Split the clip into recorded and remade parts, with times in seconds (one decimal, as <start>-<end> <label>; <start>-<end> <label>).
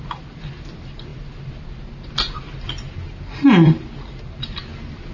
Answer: 0.0-5.1 recorded